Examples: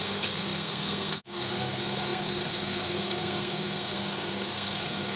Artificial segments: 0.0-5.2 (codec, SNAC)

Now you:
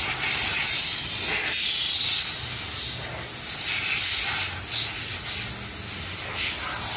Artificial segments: none

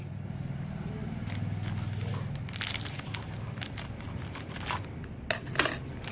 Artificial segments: none

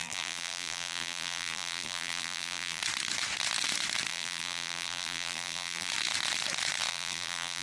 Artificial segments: 0.0-2.8 (vocoder, BigVGAN v2); 4.1-5.9; 6.9-7.6